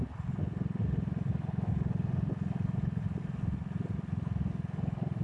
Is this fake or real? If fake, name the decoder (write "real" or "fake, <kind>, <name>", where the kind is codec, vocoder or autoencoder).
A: real